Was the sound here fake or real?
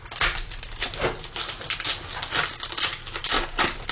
real